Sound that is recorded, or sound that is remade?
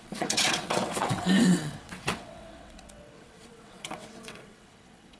remade